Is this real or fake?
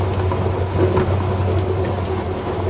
real